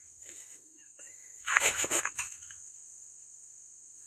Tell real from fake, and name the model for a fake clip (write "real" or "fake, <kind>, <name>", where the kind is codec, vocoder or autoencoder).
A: fake, autoencoder, DAC-VAE